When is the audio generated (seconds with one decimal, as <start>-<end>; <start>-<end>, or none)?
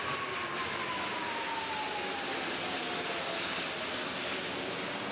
0.6-1.1